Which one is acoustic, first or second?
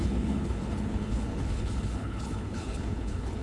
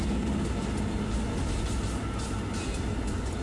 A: second